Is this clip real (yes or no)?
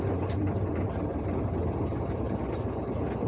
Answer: yes